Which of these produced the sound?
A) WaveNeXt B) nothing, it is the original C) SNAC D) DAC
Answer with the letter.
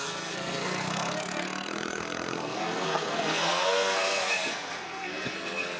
C